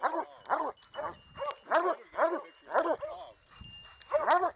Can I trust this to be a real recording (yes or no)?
yes